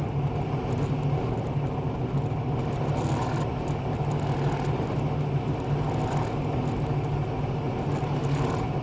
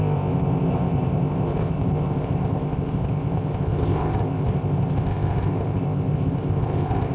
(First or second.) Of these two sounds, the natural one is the first